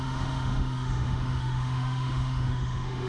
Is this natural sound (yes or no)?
no